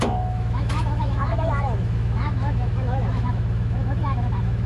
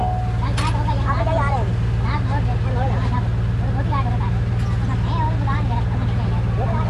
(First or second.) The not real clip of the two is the first